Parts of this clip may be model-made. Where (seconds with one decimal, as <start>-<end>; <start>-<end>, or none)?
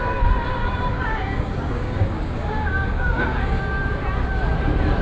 0.6-3.6